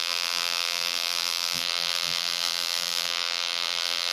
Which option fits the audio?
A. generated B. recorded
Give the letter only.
A